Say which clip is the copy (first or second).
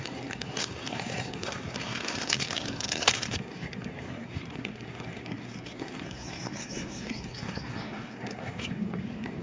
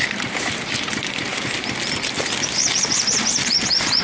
first